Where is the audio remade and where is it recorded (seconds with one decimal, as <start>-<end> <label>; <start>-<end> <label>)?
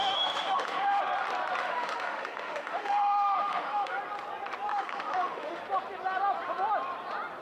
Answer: 0.0-1.0 remade; 1.0-1.6 recorded; 1.6-4.0 remade; 4.0-4.7 recorded; 4.7-5.6 remade; 5.6-7.4 recorded